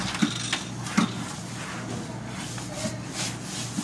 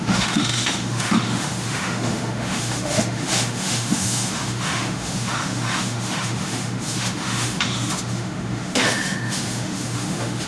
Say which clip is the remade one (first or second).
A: second